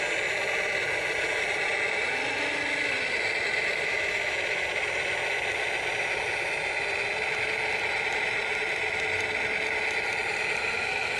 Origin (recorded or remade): recorded